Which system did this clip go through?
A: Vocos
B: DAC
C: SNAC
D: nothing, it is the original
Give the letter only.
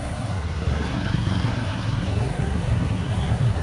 C